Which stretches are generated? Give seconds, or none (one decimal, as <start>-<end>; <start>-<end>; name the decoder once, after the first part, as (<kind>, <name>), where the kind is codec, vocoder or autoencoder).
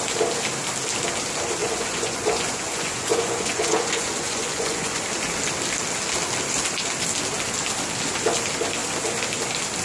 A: 1.6-5.0 (vocoder, Vocos)